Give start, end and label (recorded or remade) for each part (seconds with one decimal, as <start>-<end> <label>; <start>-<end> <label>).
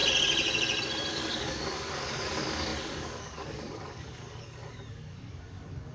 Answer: 0.0-1.1 recorded; 1.1-5.9 remade